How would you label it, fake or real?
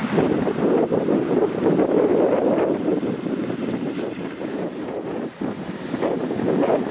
fake